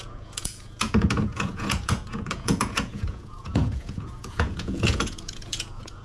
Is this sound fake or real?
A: fake